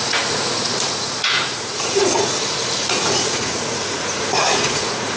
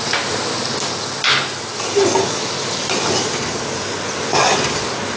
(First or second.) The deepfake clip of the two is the first